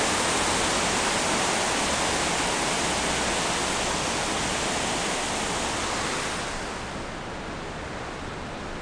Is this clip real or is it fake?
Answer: real